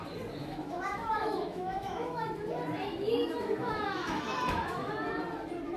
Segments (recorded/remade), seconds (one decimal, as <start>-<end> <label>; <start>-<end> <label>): 0.0-0.4 recorded; 0.4-2.2 remade; 2.2-2.9 recorded; 2.9-4.9 remade; 4.9-5.8 recorded